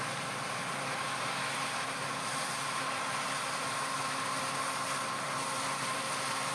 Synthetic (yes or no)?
no